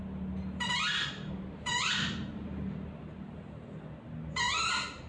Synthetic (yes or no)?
no